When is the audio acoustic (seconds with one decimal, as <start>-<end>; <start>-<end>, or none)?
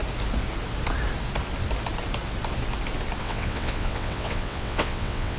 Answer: 0.0-3.2